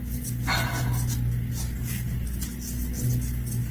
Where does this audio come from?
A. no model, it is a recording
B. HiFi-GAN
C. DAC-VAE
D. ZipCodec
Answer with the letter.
A